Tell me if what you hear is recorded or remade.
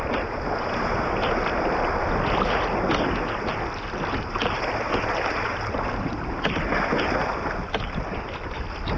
recorded